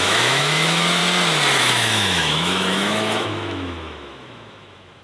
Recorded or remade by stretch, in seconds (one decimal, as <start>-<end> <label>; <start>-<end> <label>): 0.0-1.0 remade; 1.0-1.6 recorded; 1.6-5.0 remade